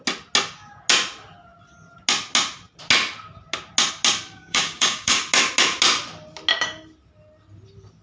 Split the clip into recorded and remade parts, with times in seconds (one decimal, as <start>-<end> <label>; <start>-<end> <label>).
0.0-4.3 recorded; 4.3-5.2 remade; 5.2-8.0 recorded